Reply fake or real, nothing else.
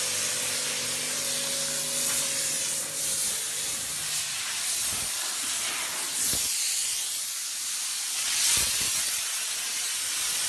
real